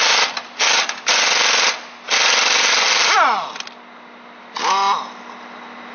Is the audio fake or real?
real